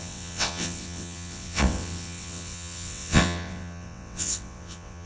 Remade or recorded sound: remade